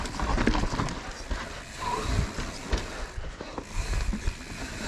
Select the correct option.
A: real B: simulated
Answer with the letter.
A